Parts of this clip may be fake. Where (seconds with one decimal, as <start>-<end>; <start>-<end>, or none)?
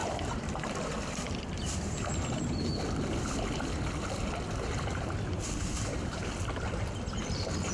0.0-6.2; 7.2-7.7